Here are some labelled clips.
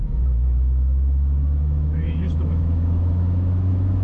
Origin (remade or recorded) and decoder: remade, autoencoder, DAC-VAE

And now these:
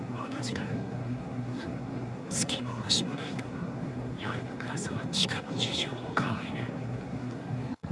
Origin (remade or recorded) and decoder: remade, codec, SNAC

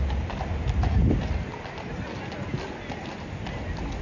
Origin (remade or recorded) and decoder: recorded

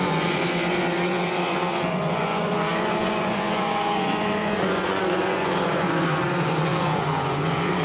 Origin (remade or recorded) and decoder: remade, vocoder, Vocos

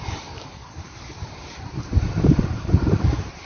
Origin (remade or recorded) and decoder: remade, vocoder, BigVGAN v2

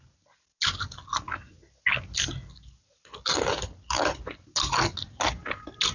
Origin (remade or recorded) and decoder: recorded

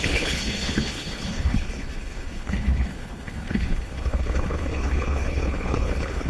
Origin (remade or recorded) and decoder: remade, codec, HILCodec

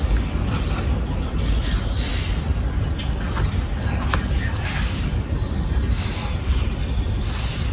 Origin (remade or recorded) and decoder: recorded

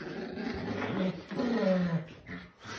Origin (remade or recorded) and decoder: recorded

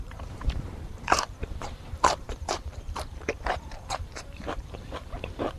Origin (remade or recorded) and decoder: remade, vocoder, BigVGAN v2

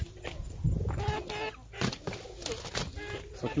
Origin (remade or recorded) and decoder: recorded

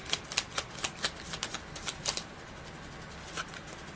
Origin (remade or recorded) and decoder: remade, vocoder, BigVGAN v2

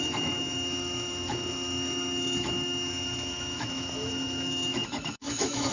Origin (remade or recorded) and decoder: remade, autoencoder, DAC-VAE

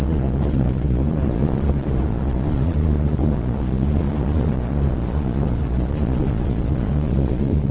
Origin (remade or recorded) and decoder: remade, vocoder, Vocos